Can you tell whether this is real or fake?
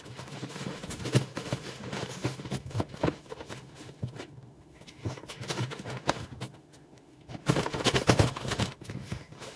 fake